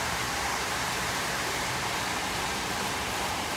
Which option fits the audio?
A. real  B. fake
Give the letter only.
B